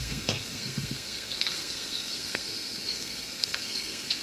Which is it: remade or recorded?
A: remade